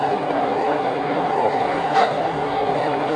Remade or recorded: remade